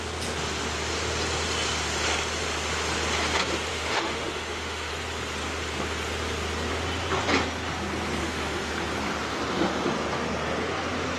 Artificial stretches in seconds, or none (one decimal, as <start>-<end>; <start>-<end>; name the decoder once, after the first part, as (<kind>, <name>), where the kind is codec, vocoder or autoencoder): 3.7-4.9 (autoencoder, DAC-VAE); 8.2-8.7